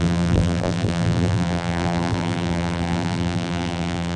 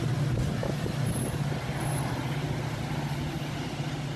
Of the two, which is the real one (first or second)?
second